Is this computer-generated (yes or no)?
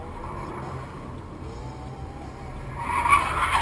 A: no